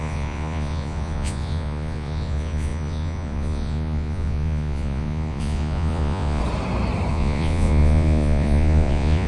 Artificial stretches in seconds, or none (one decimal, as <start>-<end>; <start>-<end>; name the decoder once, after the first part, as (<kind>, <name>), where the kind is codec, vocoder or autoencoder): 0.0-6.4 (vocoder, Vocos); 7.1-9.3